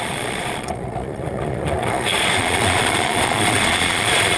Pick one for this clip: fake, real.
fake